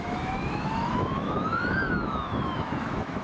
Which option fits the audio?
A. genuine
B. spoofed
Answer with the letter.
B